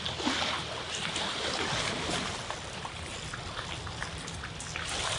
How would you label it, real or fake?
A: real